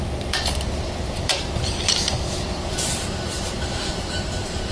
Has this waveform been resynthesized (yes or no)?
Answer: yes